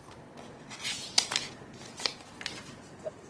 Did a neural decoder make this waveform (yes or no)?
no